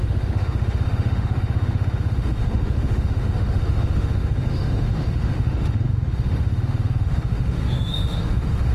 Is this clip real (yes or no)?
no